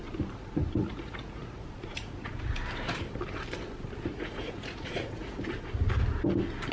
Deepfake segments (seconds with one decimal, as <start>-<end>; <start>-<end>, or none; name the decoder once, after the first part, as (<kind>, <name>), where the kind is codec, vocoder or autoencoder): 0.8-2.3 (vocoder, Vocos); 4.1-5.4